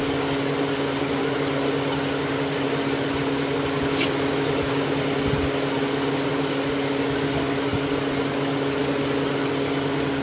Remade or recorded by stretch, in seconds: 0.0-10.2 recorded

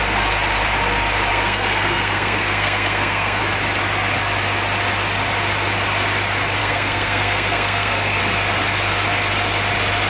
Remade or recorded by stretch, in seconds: 0.0-1.3 recorded; 1.3-3.4 remade; 3.4-6.6 recorded; 6.6-8.2 remade; 8.2-10.1 recorded

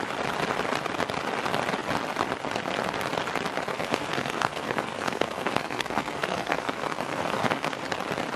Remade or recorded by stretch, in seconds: 0.0-3.7 recorded; 3.7-7.8 remade; 7.8-8.4 recorded

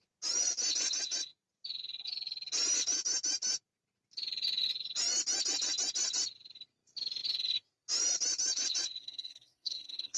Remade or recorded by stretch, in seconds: 0.0-9.0 recorded; 9.0-10.2 remade

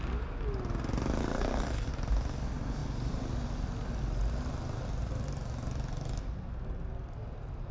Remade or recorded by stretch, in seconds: 0.0-1.2 recorded; 1.2-1.9 remade; 1.9-7.7 recorded

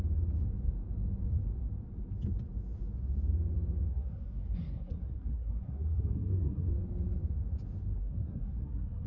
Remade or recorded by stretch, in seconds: 0.0-3.9 recorded; 3.9-6.7 remade; 6.7-8.0 recorded; 8.0-9.1 remade

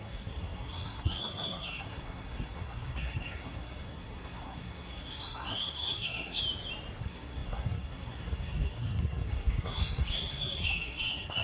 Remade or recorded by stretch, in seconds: 0.0-6.4 remade; 6.4-7.0 recorded; 7.0-11.4 remade

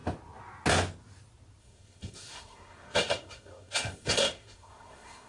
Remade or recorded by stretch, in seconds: 0.0-1.6 recorded; 1.6-5.3 remade